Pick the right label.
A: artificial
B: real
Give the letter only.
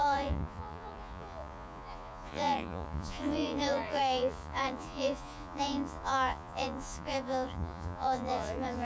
A